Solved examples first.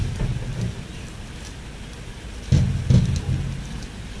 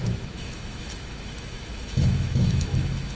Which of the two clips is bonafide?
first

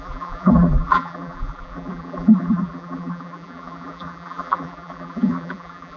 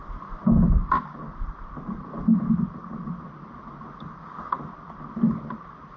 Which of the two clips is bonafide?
second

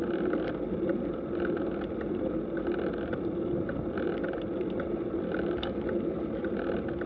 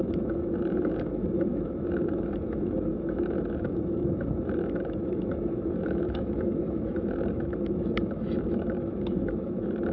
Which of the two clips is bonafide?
first